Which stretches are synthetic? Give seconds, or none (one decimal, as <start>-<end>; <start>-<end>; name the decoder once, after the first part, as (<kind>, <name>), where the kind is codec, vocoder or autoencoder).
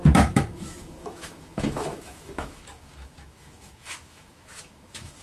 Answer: 0.0-5.2 (autoencoder, DAC-VAE)